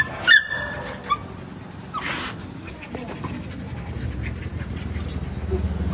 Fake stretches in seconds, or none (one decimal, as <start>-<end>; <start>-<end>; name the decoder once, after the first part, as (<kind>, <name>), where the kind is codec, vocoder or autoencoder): none